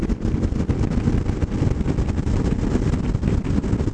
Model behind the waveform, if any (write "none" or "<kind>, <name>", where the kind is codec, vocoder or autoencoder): none